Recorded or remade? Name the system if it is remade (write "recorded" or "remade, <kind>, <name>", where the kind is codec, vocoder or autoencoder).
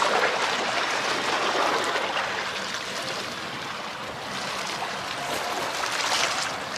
recorded